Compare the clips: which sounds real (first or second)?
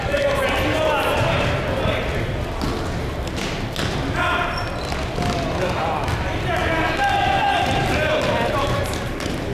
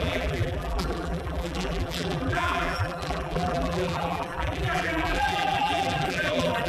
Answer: first